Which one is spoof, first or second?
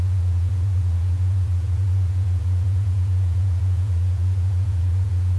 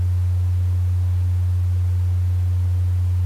first